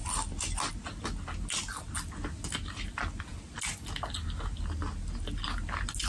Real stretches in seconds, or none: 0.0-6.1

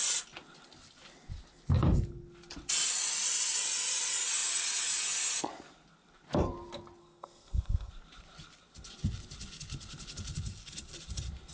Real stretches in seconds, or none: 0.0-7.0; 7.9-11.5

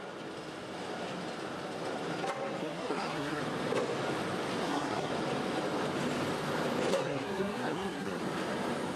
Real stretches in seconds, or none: 0.0-2.6; 3.4-4.6; 5.1-6.9; 8.2-9.0

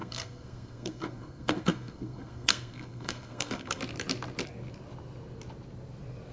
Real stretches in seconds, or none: 3.8-6.3